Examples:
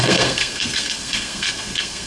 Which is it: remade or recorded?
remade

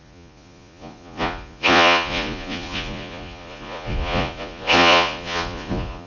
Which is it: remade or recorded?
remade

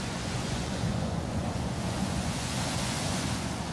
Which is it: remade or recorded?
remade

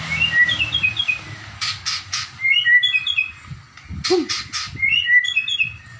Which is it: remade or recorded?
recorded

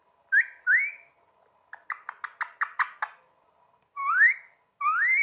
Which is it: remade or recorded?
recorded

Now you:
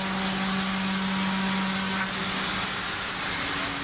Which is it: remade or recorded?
recorded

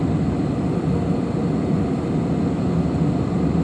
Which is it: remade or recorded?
recorded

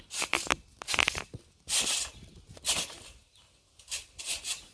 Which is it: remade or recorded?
recorded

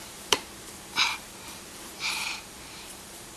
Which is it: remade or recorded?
remade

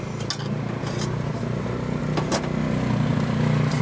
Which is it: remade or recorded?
recorded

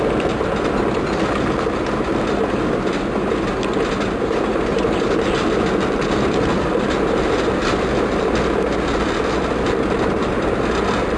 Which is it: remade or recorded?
recorded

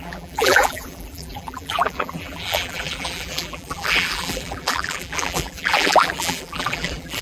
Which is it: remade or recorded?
remade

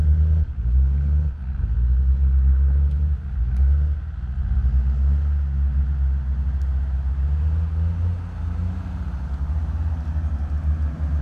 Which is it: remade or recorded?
recorded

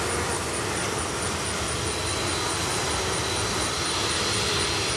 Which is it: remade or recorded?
recorded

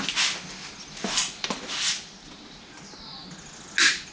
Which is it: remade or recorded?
recorded